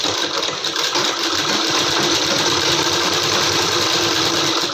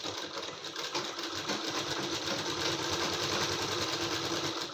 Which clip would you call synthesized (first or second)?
first